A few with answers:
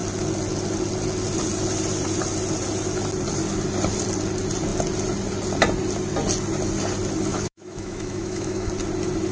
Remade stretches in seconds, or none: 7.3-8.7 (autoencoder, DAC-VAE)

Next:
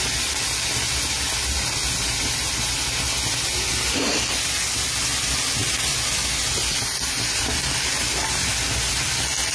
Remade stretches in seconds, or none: none

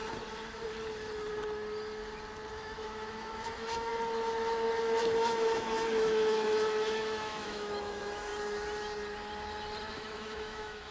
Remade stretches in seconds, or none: 2.5-3.9 (autoencoder, DAC-VAE); 5.0-8.3; 9.9-10.9

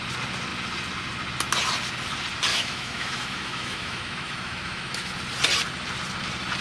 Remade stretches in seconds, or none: 2.5-5.1 (autoencoder, DAC-VAE)

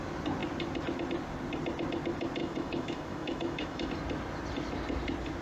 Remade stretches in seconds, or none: 2.4-3.9 (autoencoder, DAC-VAE)